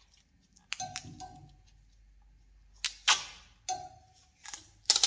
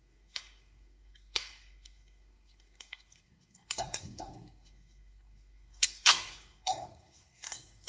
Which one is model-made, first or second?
second